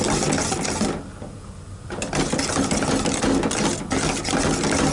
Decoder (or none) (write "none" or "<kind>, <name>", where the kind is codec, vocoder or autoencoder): none